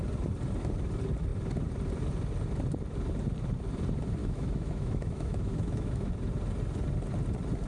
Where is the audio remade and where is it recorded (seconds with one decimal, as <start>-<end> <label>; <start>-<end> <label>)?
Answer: 0.0-4.2 recorded; 4.2-6.1 remade; 6.1-7.7 recorded